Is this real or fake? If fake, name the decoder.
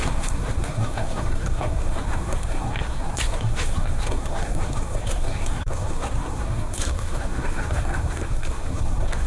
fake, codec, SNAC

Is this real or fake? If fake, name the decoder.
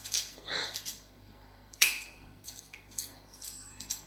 fake, codec, SNAC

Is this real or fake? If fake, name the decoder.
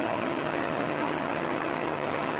fake, vocoder, HiFi-GAN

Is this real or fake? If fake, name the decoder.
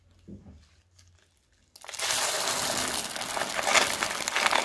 real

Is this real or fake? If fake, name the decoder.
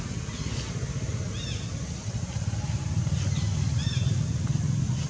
real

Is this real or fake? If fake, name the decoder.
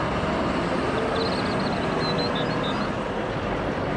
real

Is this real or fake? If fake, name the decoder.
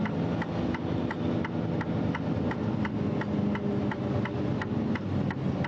real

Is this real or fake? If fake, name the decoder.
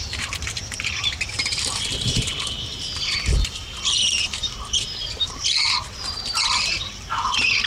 fake, vocoder, BigVGAN v2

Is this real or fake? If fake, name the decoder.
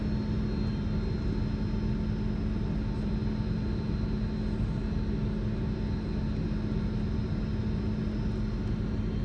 real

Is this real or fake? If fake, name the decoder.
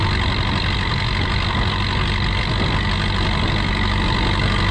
real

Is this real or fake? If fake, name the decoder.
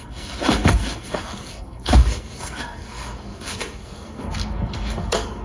fake, codec, SNAC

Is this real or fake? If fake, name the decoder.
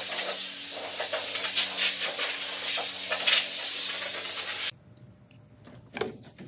real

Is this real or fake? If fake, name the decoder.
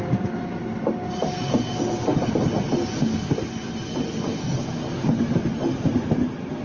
real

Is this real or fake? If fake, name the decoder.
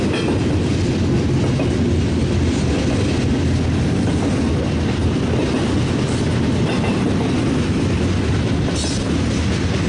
real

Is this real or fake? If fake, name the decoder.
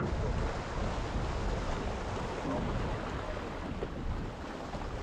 real